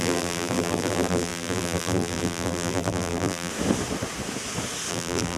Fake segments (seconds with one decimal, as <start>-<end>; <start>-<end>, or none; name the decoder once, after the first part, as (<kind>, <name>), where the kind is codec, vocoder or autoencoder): 0.0-3.5 (vocoder, BigVGAN v2); 4.9-5.4